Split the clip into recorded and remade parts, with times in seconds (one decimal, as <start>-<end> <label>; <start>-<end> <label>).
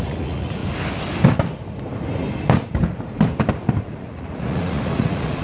0.0-0.6 remade; 0.6-3.8 recorded; 3.8-5.4 remade